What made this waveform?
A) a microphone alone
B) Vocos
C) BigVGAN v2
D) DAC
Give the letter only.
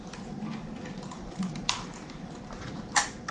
C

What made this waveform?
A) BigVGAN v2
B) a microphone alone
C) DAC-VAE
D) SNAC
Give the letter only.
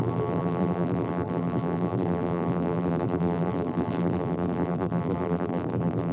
A